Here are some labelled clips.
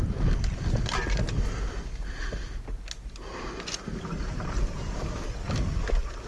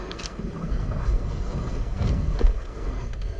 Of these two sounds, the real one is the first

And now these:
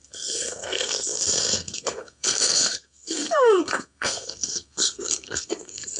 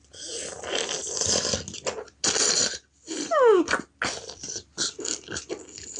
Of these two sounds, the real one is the second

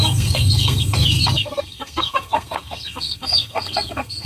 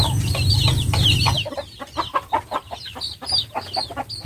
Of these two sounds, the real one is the second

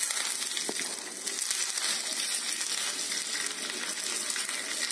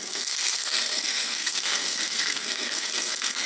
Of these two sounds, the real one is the first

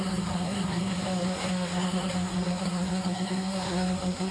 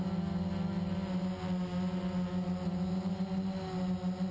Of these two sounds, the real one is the second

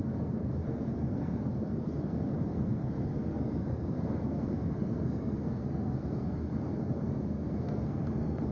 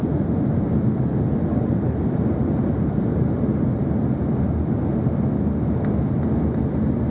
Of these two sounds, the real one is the second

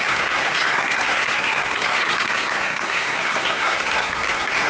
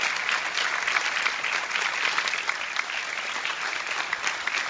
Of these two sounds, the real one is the second